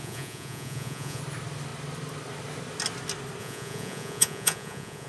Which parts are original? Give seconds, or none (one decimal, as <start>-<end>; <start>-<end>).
1.2-3.4